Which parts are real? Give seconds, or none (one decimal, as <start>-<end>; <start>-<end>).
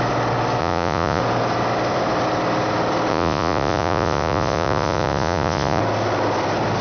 0.0-0.6; 1.2-3.1; 5.8-6.8